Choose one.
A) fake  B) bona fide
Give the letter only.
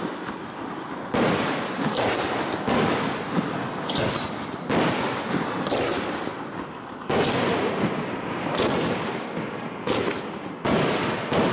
B